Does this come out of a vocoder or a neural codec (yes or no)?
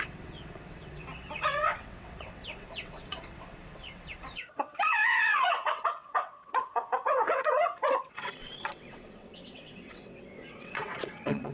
yes